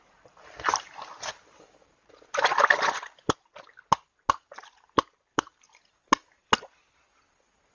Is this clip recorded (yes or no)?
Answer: yes